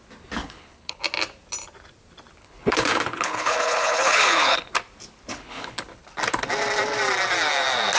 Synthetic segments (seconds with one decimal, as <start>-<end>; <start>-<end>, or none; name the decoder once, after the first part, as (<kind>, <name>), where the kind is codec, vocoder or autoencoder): 0.4-1.0 (codec, HILCodec); 2.4-4.7; 5.3-6.0